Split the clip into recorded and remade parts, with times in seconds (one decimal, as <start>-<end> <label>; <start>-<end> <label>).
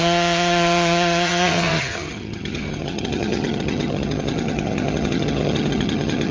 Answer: 0.0-6.3 remade